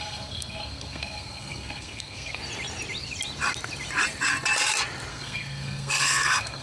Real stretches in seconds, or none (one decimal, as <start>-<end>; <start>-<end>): 2.4-5.1